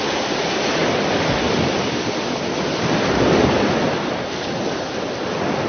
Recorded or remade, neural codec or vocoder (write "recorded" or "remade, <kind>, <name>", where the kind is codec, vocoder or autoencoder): recorded